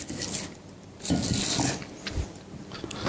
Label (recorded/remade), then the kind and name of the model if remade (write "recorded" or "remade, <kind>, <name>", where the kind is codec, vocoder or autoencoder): recorded